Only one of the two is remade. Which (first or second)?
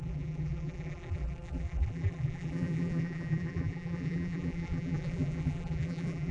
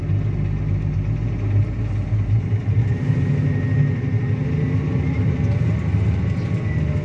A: first